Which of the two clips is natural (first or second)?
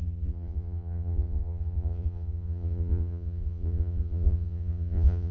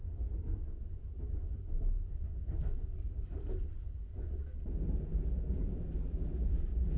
second